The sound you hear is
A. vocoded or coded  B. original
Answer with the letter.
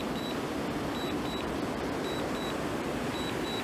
A